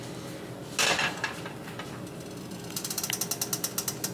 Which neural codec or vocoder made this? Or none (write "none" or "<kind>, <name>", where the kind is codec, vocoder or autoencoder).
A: none